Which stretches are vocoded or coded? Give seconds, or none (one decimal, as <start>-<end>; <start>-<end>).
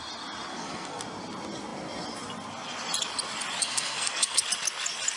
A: 0.5-1.0; 3.6-4.4